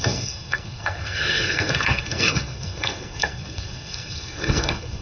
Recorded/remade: remade